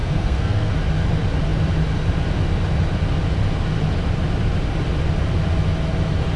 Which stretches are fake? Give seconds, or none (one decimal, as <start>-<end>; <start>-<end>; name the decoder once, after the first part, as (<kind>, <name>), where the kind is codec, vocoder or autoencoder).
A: 0.0-0.7 (codec, SNAC)